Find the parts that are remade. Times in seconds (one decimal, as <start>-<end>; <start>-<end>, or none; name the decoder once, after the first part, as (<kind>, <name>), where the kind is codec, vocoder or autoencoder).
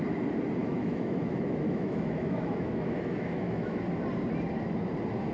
0.6-3.8 (autoencoder, DAC-VAE)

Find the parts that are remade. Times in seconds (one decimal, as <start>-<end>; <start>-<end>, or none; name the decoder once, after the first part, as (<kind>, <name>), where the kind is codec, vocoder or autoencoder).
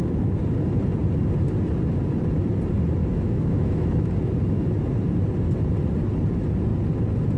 3.0-4.1 (autoencoder, DAC-VAE)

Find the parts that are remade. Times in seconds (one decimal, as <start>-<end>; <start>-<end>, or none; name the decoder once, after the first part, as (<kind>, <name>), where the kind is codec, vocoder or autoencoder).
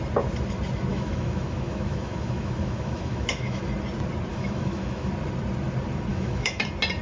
0.9-3.6 (autoencoder, DAC-VAE); 4.3-5.1; 6.1-6.6